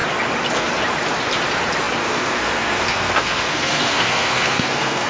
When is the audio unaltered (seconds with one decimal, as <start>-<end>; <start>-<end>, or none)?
0.0-2.0